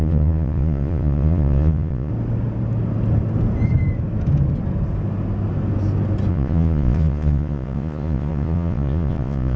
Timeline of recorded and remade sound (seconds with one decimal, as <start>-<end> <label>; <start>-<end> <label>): 0.0-2.1 remade; 2.1-6.3 recorded; 6.3-9.6 remade